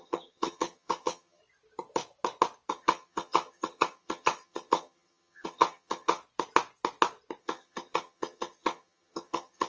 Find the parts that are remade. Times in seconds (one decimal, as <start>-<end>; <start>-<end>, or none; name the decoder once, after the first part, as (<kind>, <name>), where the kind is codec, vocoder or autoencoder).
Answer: 0.0-1.4 (vocoder, HiFi-GAN); 2.7-6.2; 7.4-9.7